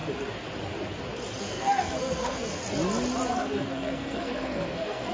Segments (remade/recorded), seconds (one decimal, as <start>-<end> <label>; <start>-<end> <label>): 0.0-1.4 recorded; 1.4-2.6 remade; 2.6-3.3 recorded; 3.3-5.1 remade